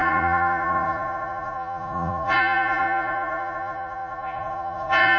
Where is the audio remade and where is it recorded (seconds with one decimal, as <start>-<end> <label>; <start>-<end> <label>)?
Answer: 0.0-5.2 remade